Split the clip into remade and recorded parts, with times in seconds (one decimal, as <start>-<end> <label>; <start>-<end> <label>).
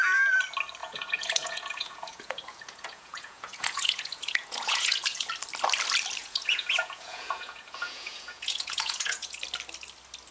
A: 0.0-0.8 recorded; 0.8-5.3 remade; 5.3-6.2 recorded; 6.2-9.4 remade; 9.4-10.3 recorded